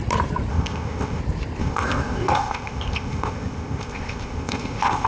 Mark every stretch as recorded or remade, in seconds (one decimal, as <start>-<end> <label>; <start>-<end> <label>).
0.0-0.5 recorded; 0.5-1.2 remade; 1.2-1.6 recorded; 1.6-5.1 remade